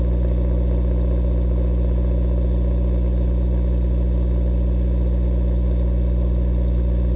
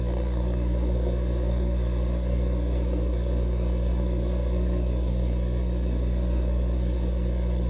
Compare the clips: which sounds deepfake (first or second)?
second